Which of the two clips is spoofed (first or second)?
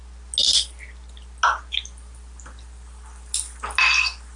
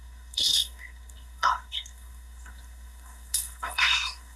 second